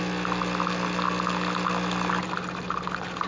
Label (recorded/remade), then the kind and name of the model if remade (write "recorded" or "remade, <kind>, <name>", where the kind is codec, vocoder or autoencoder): recorded